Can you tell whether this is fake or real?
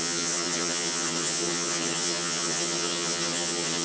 fake